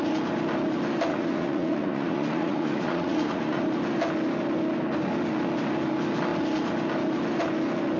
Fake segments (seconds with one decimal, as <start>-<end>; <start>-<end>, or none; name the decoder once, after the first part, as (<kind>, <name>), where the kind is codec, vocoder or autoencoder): 1.1-3.6 (vocoder, Vocos)